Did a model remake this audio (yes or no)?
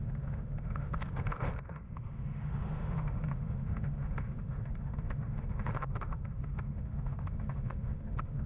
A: yes